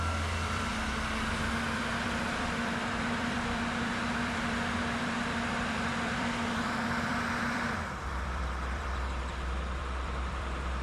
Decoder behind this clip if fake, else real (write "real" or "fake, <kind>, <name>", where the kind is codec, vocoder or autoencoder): fake, vocoder, BigVGAN v2